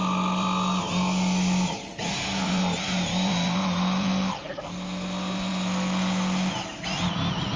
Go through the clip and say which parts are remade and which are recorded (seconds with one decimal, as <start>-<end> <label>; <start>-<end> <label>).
0.0-7.6 recorded